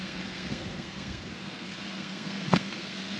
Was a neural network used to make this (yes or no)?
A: yes